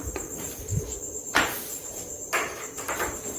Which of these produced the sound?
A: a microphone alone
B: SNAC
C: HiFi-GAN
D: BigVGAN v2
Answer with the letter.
D